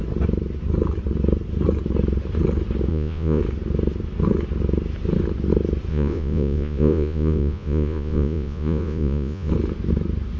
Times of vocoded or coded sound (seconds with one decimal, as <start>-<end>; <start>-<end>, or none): 2.9-3.4; 5.9-9.5